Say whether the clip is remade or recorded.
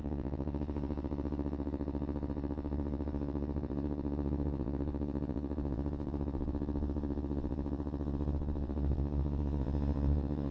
remade